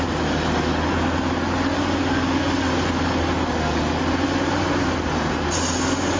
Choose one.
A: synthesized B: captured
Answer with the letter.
B